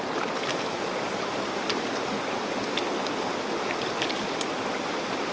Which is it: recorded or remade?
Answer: recorded